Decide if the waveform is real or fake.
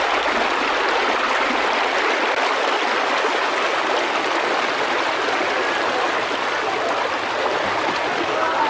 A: real